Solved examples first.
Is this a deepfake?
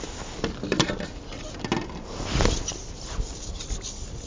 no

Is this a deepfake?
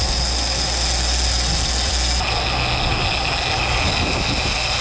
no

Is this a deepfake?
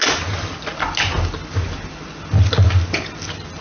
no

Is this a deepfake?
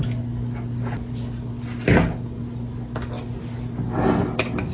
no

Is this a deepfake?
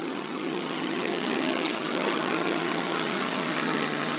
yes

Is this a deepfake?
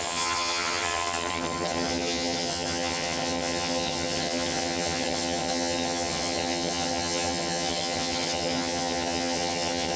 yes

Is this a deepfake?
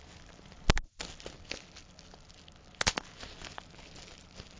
no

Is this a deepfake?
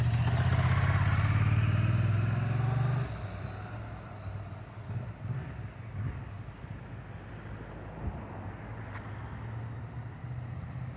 no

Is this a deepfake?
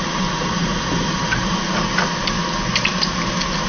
no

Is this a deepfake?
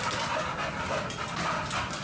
no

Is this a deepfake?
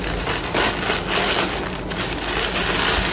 no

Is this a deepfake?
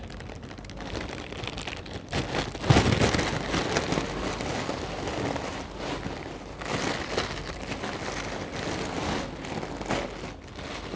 no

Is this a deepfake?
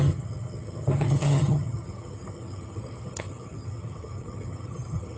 yes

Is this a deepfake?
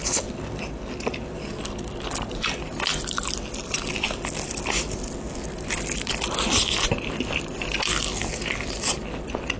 no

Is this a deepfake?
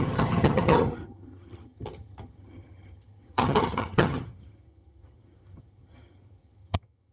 yes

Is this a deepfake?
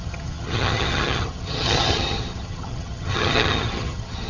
yes